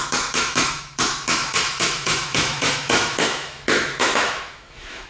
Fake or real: fake